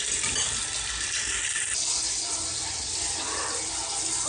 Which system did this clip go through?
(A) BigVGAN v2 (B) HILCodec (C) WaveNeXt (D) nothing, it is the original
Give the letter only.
D